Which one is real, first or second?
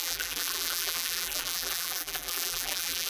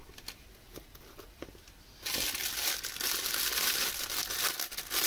second